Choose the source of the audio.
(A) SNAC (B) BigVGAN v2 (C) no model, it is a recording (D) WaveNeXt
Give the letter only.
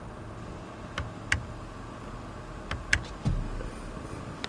C